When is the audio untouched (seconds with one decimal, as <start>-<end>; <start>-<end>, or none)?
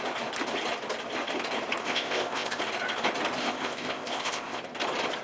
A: 0.0-1.8; 2.6-3.4; 4.6-5.2